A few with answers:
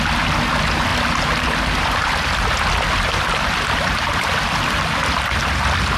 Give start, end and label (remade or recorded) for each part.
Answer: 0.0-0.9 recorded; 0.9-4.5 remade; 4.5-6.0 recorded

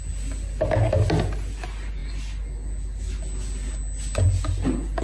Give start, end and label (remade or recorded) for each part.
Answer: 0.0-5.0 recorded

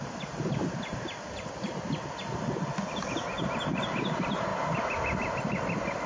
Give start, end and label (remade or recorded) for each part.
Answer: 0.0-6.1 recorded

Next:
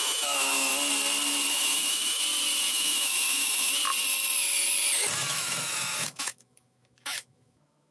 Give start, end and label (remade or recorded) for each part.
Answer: 0.0-0.7 remade; 0.7-1.5 recorded; 1.5-2.2 remade; 2.2-2.7 recorded; 2.7-3.7 remade; 3.7-5.3 recorded; 5.3-7.9 remade